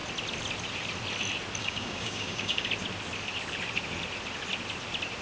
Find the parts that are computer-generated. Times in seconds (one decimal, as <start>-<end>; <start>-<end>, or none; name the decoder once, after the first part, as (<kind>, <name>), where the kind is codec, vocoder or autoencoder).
1.6-2.7 (codec, DAC)